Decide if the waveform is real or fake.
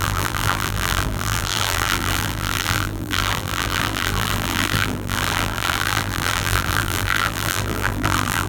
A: fake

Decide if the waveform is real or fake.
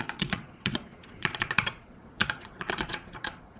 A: fake